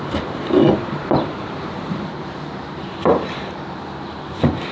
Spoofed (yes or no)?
yes